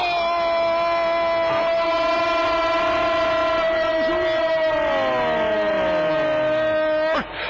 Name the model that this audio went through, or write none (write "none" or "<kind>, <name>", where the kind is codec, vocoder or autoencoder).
none